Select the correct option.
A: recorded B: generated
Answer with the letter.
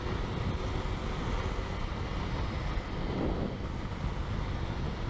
A